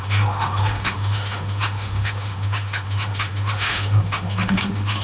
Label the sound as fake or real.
fake